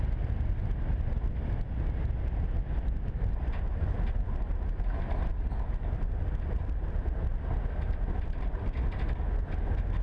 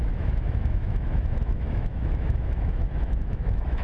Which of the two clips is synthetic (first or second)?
second